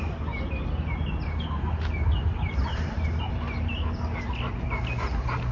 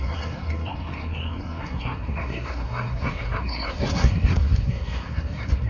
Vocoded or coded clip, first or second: second